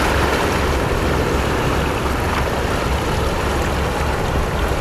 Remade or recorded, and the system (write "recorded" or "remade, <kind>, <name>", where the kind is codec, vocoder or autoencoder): recorded